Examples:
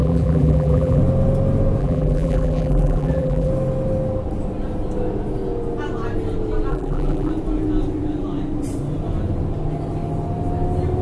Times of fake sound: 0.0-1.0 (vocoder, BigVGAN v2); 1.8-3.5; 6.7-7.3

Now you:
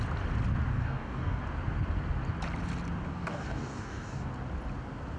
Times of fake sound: 0.7-1.4 (codec, DAC); 3.1-4.3

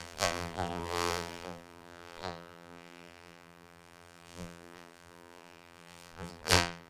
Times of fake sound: 0.0-6.9 (vocoder, BigVGAN v2)

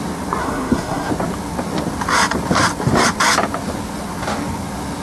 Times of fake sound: 0.4-1.1 (codec, SNAC)

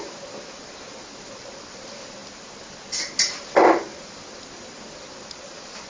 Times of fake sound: none

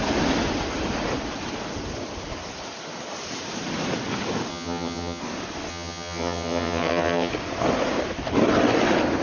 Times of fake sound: 4.5-5.2 (vocoder, HiFi-GAN); 5.7-7.3

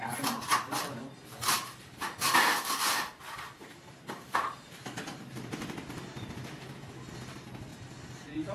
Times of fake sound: 0.5-2.4 (vocoder, BigVGAN v2); 2.9-7.1; 7.7-8.5